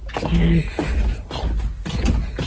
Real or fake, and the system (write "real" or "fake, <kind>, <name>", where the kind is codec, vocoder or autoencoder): real